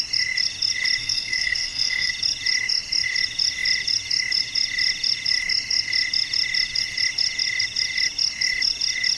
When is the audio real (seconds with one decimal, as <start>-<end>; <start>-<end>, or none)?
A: 0.0-1.0; 2.1-9.2